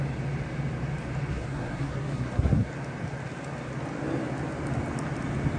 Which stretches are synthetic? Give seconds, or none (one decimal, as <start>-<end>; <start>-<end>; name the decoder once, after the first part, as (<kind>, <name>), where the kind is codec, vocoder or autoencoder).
1.3-2.7 (codec, SNAC)